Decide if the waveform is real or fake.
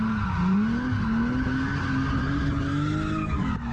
real